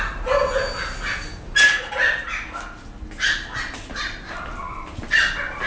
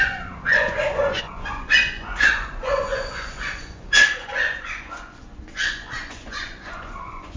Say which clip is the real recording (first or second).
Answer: first